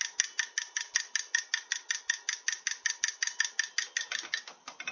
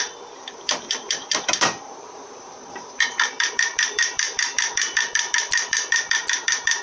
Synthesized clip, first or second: second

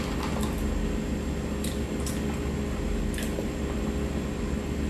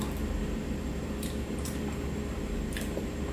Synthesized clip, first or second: second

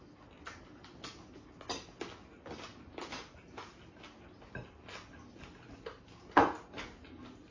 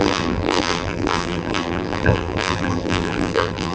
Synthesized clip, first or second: second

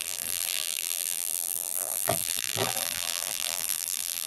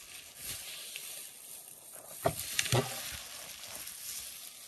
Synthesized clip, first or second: first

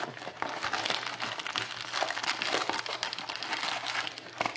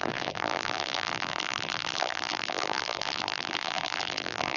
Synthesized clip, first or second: second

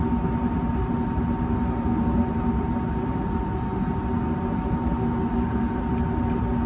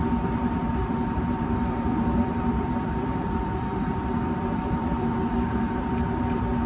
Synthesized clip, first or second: second